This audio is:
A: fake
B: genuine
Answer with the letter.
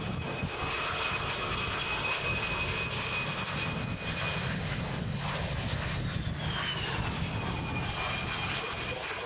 B